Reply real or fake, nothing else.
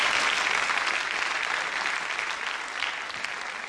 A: real